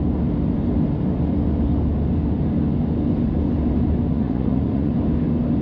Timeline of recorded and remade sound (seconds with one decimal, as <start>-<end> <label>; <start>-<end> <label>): 0.0-4.1 recorded; 4.1-4.9 remade; 4.9-5.6 recorded